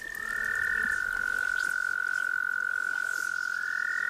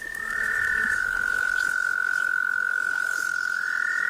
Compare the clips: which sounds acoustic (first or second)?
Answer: first